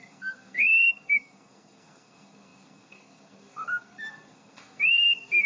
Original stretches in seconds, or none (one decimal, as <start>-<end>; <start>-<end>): none